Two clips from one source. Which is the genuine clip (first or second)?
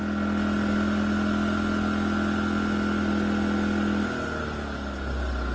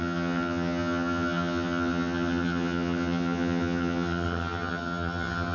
first